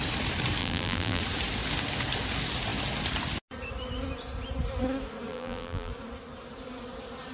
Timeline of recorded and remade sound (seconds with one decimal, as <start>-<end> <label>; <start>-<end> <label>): 0.0-0.6 recorded; 0.6-1.2 remade; 1.2-5.3 recorded; 5.3-5.9 remade; 5.9-7.3 recorded